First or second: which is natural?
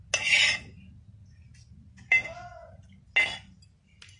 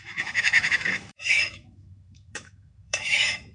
first